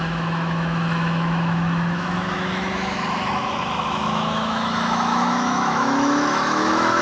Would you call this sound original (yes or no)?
no